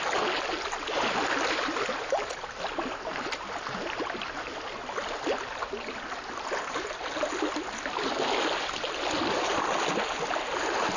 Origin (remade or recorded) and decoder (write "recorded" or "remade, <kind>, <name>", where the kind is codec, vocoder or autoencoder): recorded